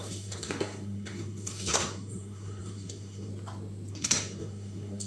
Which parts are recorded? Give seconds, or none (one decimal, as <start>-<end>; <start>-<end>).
3.3-3.9